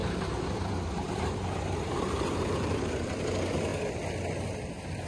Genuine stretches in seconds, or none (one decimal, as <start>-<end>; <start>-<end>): 3.1-5.1